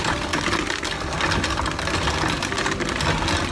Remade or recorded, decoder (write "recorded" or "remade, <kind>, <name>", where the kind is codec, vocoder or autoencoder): recorded